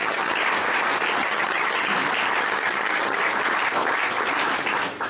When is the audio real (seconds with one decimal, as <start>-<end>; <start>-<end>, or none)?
0.4-1.2; 1.9-2.4; 3.2-5.1